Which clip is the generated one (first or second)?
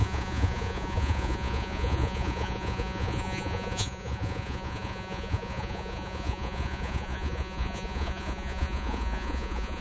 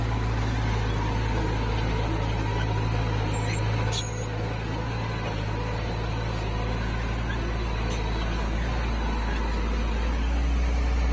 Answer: first